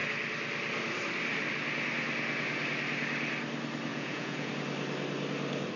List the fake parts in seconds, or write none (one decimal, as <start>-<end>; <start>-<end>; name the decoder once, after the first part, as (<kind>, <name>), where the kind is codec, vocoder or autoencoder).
3.9-4.5 (vocoder, Vocos)